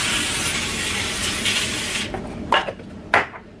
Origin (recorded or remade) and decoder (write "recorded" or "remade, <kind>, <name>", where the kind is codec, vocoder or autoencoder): recorded